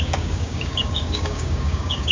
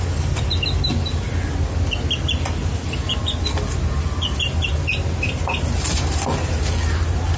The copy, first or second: first